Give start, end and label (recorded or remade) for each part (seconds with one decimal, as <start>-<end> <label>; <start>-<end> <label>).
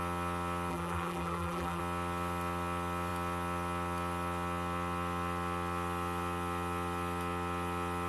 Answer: 0.0-0.7 recorded; 0.7-1.8 remade; 1.8-8.1 recorded